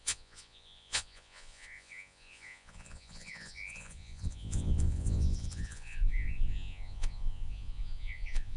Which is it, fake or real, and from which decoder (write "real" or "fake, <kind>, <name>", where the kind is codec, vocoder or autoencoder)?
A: fake, vocoder, Vocos